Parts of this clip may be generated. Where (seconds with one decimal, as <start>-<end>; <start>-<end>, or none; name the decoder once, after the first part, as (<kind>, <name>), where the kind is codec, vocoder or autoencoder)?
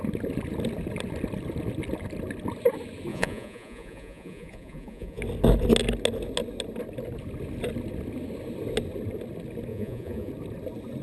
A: 3.1-5.2 (vocoder, Vocos); 9.7-10.3